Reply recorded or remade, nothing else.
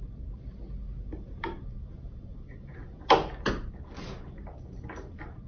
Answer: recorded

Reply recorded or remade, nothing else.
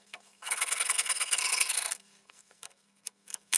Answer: remade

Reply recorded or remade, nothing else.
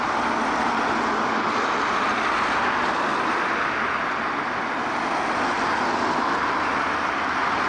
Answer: recorded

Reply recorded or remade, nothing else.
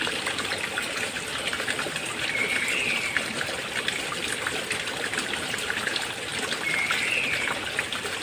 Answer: recorded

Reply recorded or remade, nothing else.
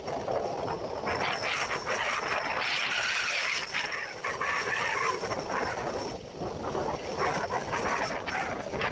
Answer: recorded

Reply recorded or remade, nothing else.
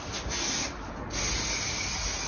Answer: recorded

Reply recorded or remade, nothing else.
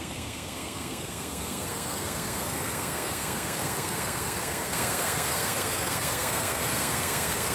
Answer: remade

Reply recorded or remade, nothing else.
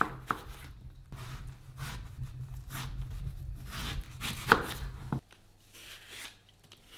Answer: recorded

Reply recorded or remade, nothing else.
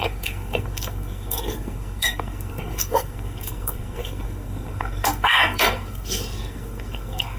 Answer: remade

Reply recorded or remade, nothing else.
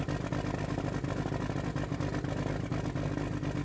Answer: recorded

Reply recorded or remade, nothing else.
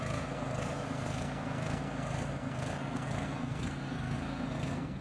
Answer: remade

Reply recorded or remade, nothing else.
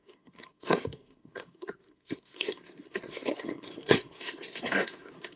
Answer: remade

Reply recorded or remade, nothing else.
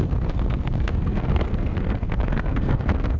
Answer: remade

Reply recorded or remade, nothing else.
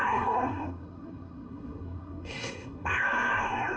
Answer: remade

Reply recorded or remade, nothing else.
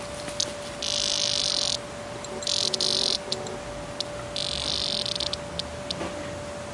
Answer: recorded